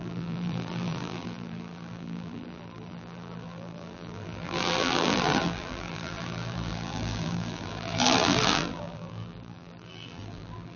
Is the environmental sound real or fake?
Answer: fake